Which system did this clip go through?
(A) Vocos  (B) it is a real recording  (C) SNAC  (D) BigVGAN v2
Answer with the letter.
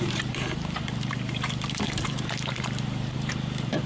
D